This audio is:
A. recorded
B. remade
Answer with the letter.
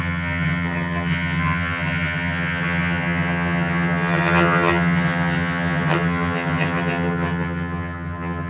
B